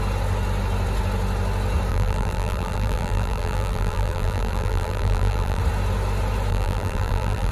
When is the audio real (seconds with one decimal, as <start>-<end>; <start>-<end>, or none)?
0.0-1.9; 5.6-6.5